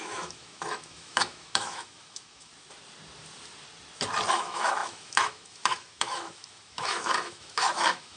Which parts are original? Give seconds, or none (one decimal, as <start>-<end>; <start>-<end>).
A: 2.5-4.3